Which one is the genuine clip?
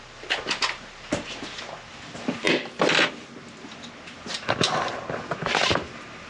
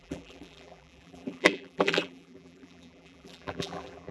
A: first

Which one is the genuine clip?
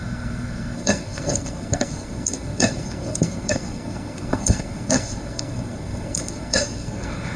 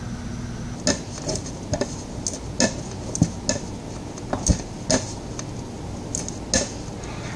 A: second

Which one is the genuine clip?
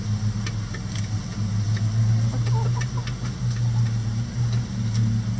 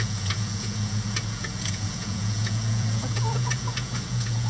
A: first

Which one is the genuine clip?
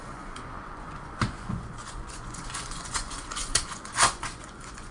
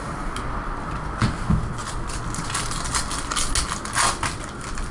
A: second